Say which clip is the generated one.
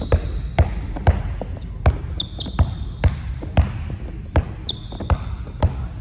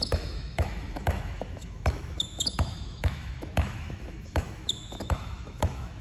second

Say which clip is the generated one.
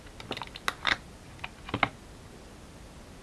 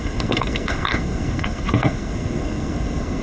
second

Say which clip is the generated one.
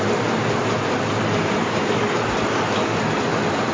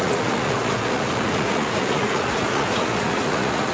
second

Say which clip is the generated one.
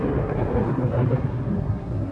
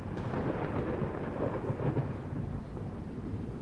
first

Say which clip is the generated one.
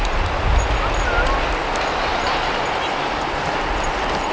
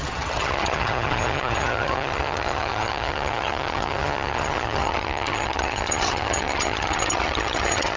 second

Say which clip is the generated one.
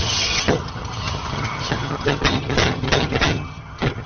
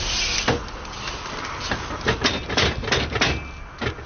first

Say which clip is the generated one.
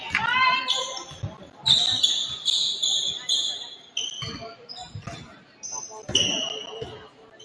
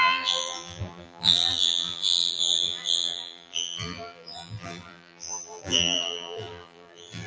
second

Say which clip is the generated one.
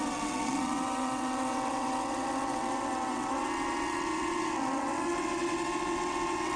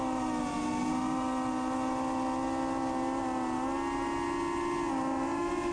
first